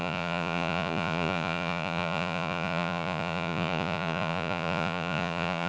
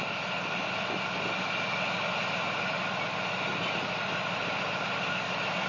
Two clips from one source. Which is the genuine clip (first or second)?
second